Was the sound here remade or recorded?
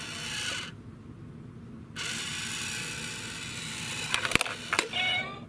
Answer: recorded